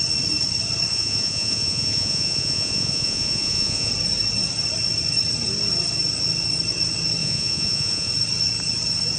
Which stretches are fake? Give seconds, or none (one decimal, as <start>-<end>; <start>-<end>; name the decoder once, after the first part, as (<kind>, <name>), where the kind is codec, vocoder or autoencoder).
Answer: 0.9-3.9 (vocoder, Vocos); 7.2-8.1